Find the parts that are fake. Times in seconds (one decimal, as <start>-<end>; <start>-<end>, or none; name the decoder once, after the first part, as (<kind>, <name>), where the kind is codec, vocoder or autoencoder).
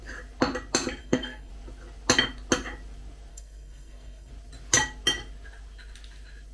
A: 1.0-1.5 (codec, SNAC); 3.3-4.3